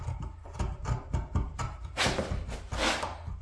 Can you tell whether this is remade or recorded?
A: recorded